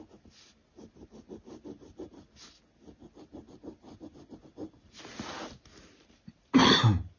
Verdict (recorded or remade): recorded